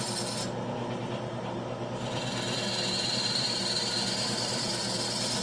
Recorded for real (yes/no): yes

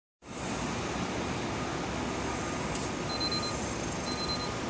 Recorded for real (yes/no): yes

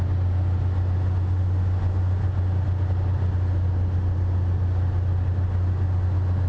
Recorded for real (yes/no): yes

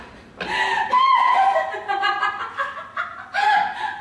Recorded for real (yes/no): yes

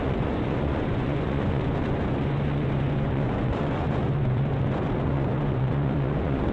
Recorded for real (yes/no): no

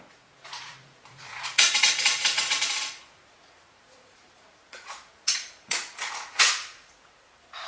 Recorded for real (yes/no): no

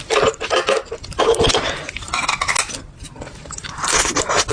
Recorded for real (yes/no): yes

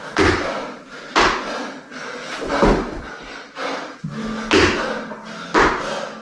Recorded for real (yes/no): yes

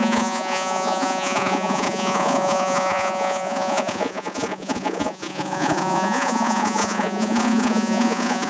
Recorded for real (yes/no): no